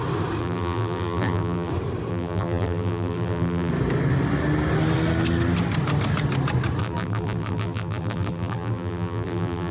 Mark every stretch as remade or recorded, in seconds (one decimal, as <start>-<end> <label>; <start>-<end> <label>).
0.0-0.4 recorded; 0.4-1.7 remade; 1.7-2.1 recorded; 2.1-3.7 remade; 3.7-6.8 recorded; 6.8-9.7 remade